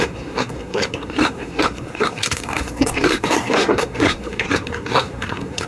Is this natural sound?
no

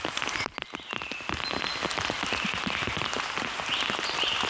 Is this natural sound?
yes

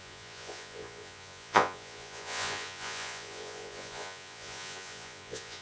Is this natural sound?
no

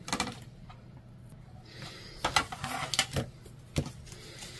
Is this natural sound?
yes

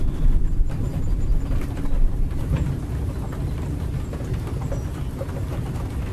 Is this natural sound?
yes